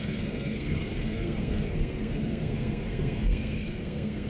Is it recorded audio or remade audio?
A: remade